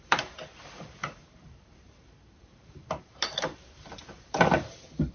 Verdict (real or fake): fake